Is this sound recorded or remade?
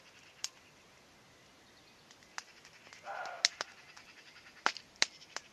recorded